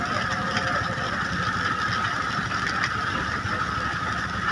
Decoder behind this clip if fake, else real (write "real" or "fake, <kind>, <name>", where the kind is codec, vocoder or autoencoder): real